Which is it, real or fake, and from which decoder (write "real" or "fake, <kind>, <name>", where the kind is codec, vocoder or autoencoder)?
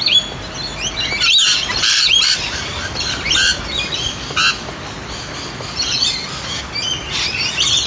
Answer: real